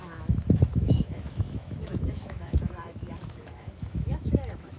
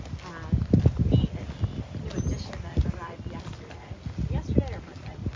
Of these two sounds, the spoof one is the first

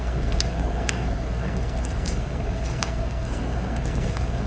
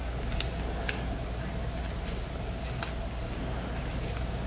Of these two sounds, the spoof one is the first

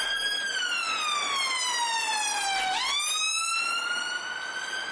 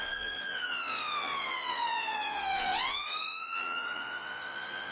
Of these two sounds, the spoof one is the second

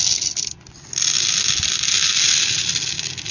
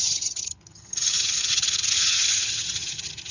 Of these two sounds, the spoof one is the second